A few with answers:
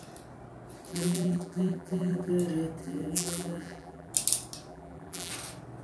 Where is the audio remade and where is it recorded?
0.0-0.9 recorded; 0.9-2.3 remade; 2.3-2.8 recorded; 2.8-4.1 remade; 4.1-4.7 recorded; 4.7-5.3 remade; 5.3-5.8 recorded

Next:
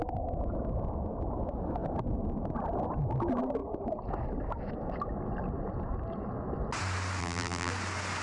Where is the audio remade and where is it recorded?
0.0-7.2 recorded; 7.2-7.7 remade; 7.7-8.2 recorded

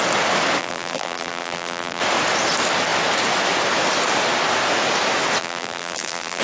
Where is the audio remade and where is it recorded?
0.0-0.6 recorded; 0.6-2.0 remade; 2.0-5.4 recorded; 5.4-6.4 remade